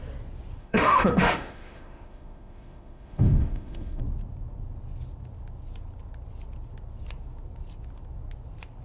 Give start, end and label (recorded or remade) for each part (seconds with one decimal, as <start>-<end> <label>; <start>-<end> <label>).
0.0-0.6 recorded; 0.6-4.0 remade; 4.0-8.8 recorded

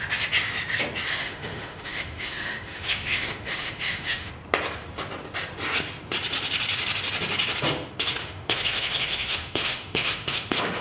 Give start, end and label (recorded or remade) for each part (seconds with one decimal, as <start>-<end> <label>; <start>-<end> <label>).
0.0-1.1 recorded; 1.1-4.3 remade; 4.3-8.2 recorded; 8.2-10.8 remade

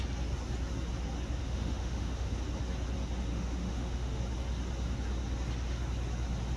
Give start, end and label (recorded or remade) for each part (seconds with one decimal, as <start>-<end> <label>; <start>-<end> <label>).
0.0-1.4 recorded; 1.4-2.3 remade; 2.3-3.3 recorded; 3.3-4.2 remade; 4.2-6.6 recorded

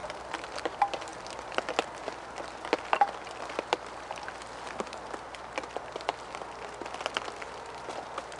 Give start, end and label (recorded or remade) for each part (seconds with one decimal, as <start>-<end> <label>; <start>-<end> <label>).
0.0-8.4 recorded

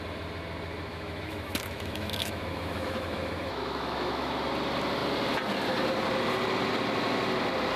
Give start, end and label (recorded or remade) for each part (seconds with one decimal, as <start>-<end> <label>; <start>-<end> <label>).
0.0-0.9 recorded; 0.9-4.5 remade; 4.5-7.8 recorded